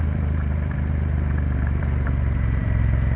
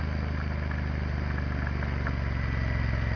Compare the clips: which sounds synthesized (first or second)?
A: first